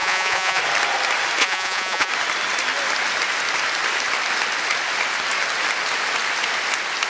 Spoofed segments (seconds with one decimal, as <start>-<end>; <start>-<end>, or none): 0.0-0.6; 1.4-2.1